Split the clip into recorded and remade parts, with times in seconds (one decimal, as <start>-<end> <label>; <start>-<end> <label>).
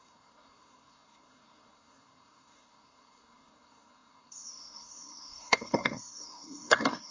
0.0-7.1 remade